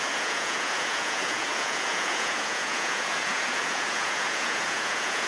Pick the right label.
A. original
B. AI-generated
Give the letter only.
B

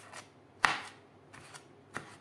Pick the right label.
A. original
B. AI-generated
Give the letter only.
A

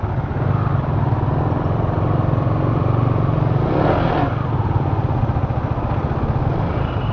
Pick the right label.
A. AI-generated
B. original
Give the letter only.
B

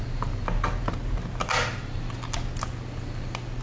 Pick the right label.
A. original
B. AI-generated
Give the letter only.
A